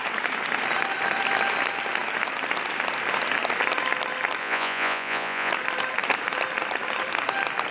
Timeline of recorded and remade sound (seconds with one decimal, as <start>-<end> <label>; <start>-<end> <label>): 0.0-4.4 recorded; 4.4-5.5 remade; 5.5-7.7 recorded